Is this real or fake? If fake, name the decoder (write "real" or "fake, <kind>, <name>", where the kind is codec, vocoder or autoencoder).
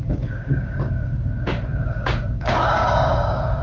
fake, codec, DAC